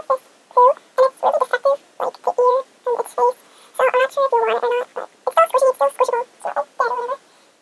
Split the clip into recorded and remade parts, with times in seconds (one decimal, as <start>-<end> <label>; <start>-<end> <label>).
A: 0.0-1.5 remade; 1.5-2.5 recorded; 2.5-4.9 remade; 4.9-5.6 recorded; 5.6-7.6 remade